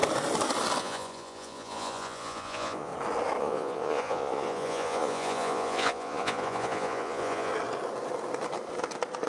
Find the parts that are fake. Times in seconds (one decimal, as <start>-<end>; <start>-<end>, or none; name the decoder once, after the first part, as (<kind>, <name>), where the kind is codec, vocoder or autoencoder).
0.8-2.9 (vocoder, Vocos); 3.4-7.5